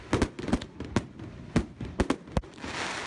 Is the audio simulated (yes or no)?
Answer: no